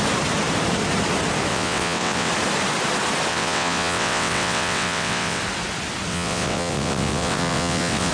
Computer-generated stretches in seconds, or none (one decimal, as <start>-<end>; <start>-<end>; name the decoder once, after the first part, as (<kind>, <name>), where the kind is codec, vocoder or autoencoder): 1.5-2.3 (vocoder, WaveNeXt); 3.3-5.4; 6.1-8.1